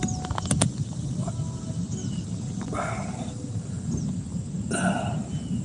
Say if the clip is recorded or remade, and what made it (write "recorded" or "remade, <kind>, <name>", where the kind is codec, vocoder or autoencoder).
recorded